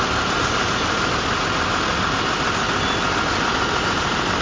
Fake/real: real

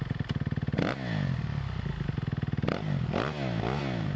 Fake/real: real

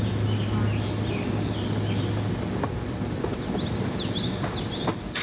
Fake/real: real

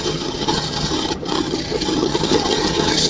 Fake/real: fake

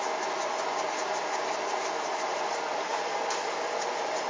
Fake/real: real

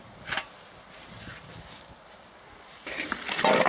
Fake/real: real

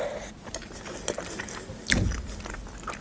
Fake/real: real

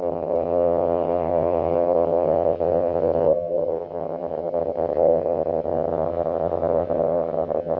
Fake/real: fake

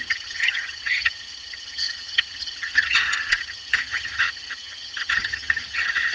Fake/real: fake